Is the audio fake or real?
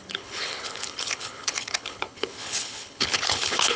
fake